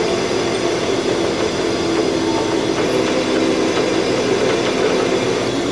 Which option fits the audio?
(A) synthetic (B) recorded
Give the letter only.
B